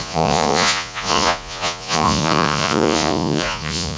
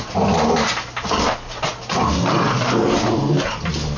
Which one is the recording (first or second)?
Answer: second